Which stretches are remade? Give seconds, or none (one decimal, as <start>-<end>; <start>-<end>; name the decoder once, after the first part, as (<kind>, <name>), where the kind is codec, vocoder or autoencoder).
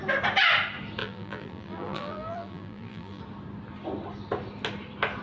1.0-3.2 (vocoder, BigVGAN v2)